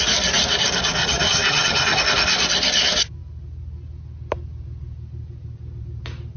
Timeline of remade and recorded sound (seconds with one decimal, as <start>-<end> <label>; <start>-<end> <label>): 0.0-1.0 recorded; 1.0-2.0 remade; 2.0-6.4 recorded